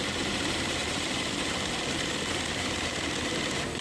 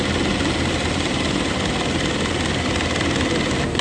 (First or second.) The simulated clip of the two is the first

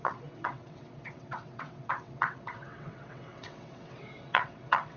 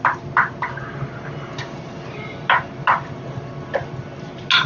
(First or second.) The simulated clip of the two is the first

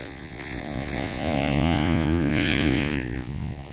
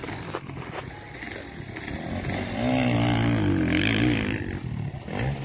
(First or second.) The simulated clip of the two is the first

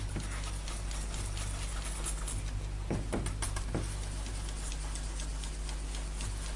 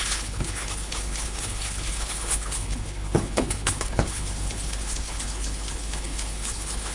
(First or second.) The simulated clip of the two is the second